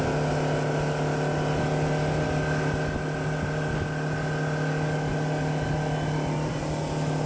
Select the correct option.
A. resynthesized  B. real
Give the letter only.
B